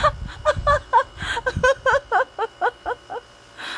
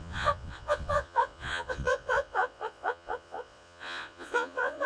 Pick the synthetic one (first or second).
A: second